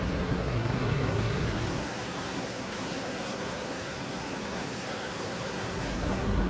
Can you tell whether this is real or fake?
fake